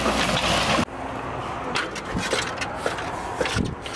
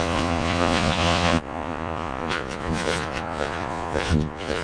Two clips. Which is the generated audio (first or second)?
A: second